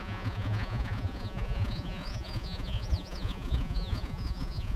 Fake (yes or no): yes